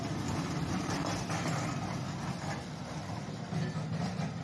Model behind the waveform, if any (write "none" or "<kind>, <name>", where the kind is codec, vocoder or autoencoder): none